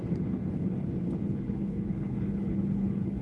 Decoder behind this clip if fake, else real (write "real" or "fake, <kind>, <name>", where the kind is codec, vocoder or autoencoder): fake, codec, HILCodec